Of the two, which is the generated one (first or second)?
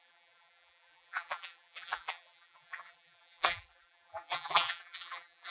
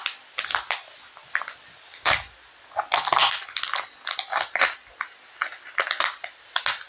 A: first